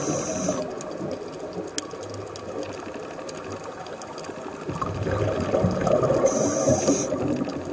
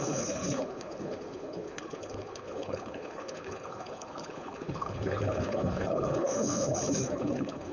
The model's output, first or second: second